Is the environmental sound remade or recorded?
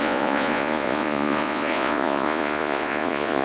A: remade